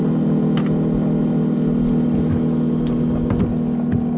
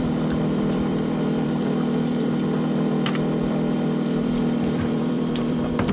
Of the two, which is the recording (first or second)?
first